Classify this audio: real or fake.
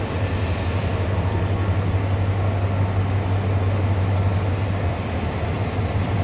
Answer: real